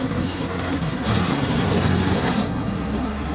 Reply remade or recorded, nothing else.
remade